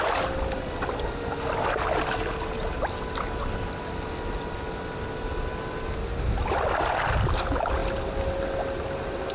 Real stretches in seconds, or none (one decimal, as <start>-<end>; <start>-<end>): 0.0-9.3